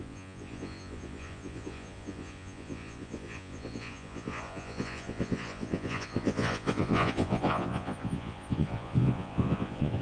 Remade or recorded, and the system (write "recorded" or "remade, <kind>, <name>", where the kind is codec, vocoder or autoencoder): remade, vocoder, Vocos